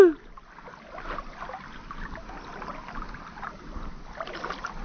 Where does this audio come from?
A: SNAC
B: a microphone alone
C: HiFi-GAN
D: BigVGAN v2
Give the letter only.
B